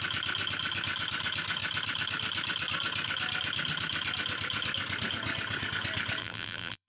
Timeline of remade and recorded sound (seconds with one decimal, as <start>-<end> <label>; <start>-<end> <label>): 0.0-6.2 recorded; 6.2-6.9 remade